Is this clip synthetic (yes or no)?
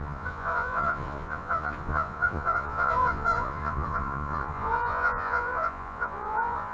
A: yes